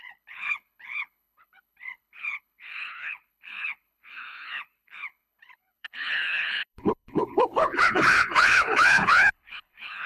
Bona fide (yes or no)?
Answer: no